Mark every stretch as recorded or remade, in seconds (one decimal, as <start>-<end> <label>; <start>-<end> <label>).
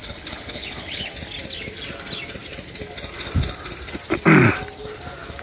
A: 0.0-1.1 remade; 1.1-5.4 recorded